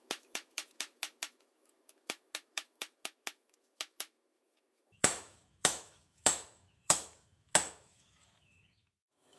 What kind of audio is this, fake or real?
fake